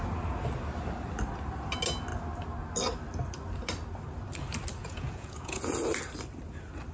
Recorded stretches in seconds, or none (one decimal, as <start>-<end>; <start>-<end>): 0.0-4.8; 5.6-6.9